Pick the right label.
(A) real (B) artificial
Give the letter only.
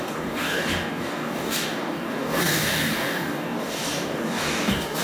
B